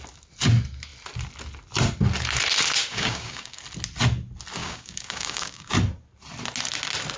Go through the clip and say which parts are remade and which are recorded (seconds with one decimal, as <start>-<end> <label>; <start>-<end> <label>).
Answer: 0.0-2.9 recorded; 2.9-3.6 remade; 3.6-4.6 recorded; 4.6-5.7 remade; 5.7-7.2 recorded